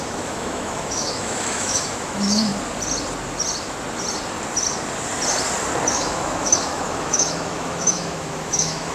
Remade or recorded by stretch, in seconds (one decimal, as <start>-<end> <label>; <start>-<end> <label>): 0.0-2.5 remade; 2.5-5.9 recorded; 5.9-8.9 remade